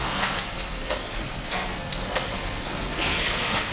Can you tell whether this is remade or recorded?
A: remade